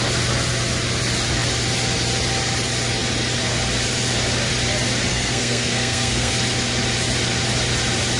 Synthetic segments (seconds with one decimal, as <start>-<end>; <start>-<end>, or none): 5.1-6.3